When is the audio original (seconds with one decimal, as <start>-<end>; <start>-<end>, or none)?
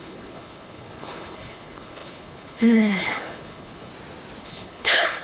3.9-4.4